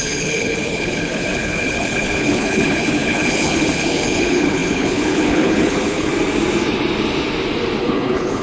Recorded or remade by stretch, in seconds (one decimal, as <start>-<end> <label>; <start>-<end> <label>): 0.0-6.1 remade; 6.1-7.8 recorded; 7.8-8.4 remade